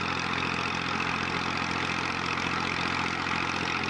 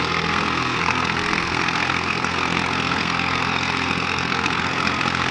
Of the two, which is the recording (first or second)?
first